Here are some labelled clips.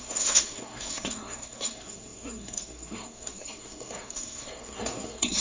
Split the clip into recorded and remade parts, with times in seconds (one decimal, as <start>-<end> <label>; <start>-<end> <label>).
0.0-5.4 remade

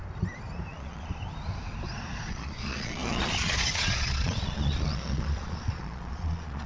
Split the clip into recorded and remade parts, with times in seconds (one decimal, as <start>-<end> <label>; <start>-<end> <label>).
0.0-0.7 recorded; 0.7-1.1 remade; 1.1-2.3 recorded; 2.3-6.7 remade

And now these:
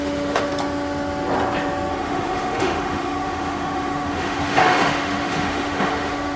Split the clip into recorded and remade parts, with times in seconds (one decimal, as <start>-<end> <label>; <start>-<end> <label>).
0.0-0.5 remade; 0.5-1.9 recorded; 1.9-6.4 remade